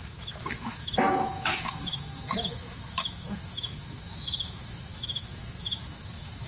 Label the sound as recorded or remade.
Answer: remade